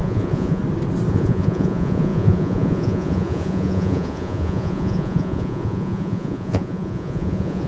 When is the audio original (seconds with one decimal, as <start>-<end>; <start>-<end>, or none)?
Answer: 0.6-1.1